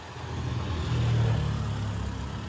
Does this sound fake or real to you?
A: real